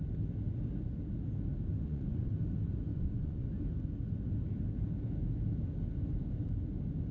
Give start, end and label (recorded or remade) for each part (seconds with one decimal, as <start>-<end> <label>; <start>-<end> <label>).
0.0-1.7 recorded; 1.7-2.3 remade; 2.3-2.9 recorded; 2.9-3.5 remade; 3.5-7.1 recorded